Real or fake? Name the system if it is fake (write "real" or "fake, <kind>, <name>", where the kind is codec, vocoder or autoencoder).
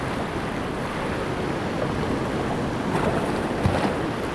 real